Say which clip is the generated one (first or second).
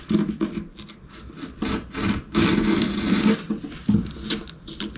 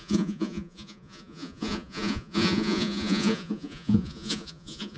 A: second